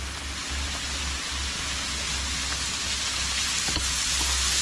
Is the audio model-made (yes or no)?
no